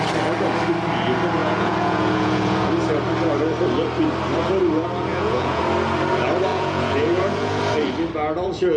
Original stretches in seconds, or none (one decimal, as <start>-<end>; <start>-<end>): 0.0-1.4; 2.7-5.1; 5.6-6.5; 7.6-8.8